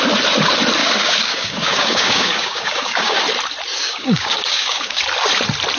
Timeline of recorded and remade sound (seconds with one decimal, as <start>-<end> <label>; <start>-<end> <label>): 0.0-0.8 recorded; 0.8-3.2 remade; 3.2-3.8 recorded; 3.8-5.0 remade; 5.0-5.8 recorded